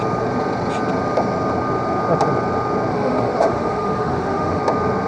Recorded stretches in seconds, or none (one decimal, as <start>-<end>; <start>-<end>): 0.0-2.9; 4.6-5.1